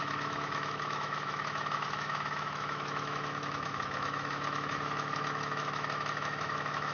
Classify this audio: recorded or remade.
remade